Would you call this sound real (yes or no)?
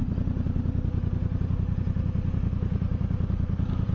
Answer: yes